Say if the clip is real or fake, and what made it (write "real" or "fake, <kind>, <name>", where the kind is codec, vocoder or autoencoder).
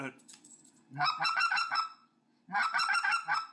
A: fake, vocoder, Vocos